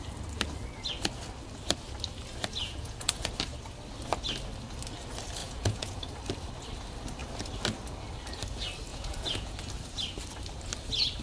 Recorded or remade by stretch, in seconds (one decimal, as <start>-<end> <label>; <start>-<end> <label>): 0.0-2.6 recorded; 2.6-3.3 remade; 3.3-5.4 recorded; 5.4-6.0 remade; 6.0-8.9 recorded; 8.9-9.6 remade; 9.6-11.2 recorded